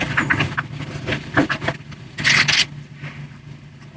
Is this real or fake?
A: real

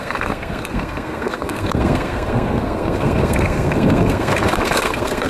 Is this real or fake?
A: fake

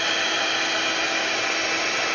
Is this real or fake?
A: real